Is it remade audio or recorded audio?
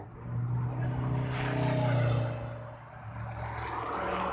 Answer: recorded